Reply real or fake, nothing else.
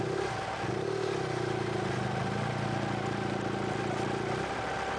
real